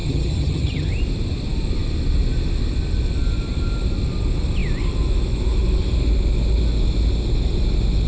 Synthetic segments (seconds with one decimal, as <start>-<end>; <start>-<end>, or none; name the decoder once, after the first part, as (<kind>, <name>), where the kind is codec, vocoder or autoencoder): 0.0-0.9 (vocoder, HiFi-GAN)